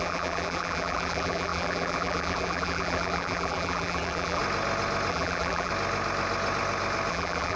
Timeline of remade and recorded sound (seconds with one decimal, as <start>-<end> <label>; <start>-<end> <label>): 0.0-4.4 remade; 4.4-5.1 recorded; 5.1-5.7 remade; 5.7-7.1 recorded; 7.1-7.6 remade